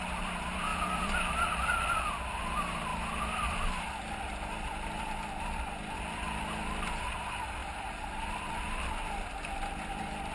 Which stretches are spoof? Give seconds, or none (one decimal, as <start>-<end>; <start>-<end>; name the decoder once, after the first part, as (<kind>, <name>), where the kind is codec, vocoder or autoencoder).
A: 7.6-8.5 (vocoder, BigVGAN v2)